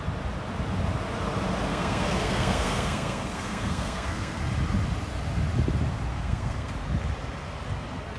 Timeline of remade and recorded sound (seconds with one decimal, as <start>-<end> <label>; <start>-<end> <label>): 0.0-1.7 recorded; 1.7-4.4 remade; 4.4-6.1 recorded; 6.1-6.7 remade; 6.7-8.2 recorded